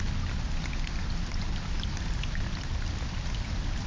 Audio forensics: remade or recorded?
recorded